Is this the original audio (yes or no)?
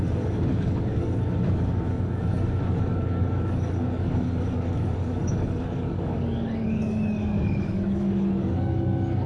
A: no